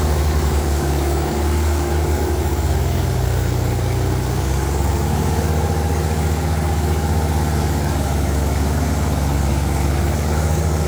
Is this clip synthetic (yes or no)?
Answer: yes